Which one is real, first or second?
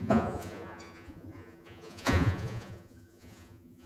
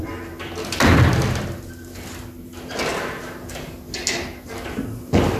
second